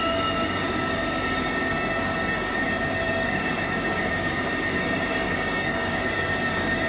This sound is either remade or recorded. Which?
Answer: remade